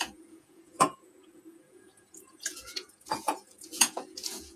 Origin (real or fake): fake